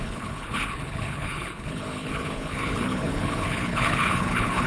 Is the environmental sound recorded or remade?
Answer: remade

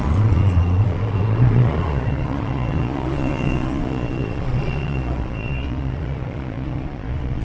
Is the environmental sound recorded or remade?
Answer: remade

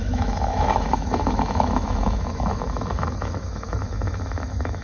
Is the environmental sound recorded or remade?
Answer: remade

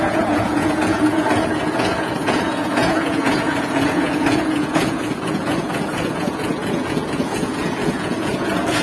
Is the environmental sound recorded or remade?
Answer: remade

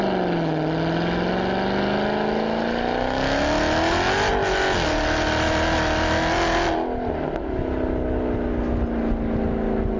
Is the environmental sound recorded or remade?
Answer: recorded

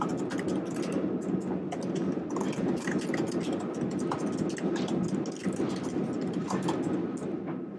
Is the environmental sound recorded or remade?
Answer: recorded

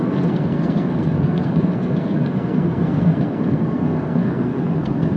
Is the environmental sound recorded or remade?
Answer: remade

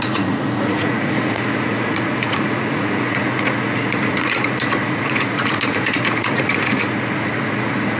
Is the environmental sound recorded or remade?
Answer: remade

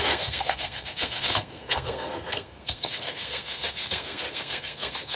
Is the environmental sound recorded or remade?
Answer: remade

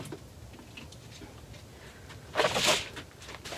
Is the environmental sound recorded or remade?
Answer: recorded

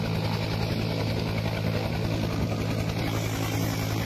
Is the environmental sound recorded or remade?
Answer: recorded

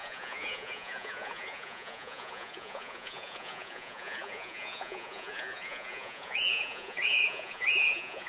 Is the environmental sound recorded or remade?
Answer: remade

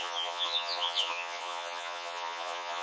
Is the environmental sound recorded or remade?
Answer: remade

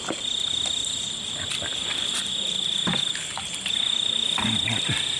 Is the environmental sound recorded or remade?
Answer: recorded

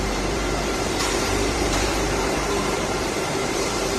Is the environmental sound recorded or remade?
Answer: remade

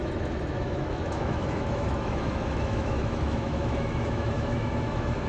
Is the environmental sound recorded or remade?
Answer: remade